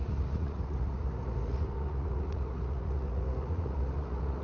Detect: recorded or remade remade